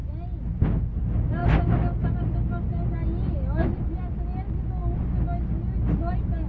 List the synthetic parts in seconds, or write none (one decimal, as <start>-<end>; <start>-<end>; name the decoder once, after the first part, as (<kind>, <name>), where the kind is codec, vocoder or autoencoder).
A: none